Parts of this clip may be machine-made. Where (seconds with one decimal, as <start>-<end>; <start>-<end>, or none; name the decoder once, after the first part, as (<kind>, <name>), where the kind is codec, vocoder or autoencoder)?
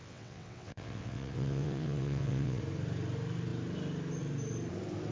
0.0-2.6 (vocoder, WaveNeXt)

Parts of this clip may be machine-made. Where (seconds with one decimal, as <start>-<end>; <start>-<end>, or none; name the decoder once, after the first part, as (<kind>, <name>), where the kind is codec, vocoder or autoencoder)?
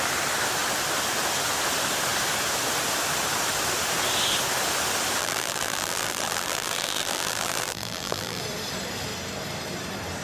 5.2-8.4 (vocoder, BigVGAN v2)